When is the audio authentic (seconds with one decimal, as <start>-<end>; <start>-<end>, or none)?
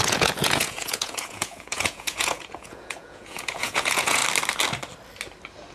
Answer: 4.2-5.7